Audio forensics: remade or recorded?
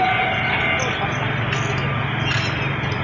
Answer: recorded